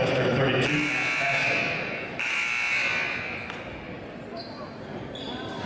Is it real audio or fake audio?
real